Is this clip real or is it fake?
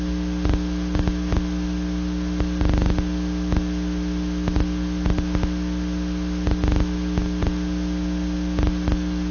real